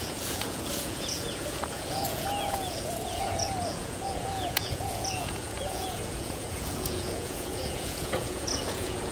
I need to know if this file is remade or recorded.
remade